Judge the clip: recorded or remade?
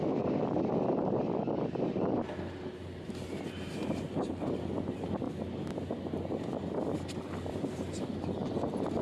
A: recorded